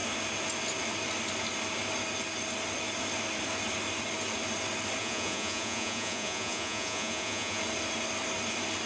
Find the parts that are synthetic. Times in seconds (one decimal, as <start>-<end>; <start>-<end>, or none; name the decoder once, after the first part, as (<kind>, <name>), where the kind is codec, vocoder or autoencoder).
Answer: 5.0-7.6 (vocoder, Vocos)